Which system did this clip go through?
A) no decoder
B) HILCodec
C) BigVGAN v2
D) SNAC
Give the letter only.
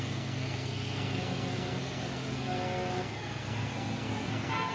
D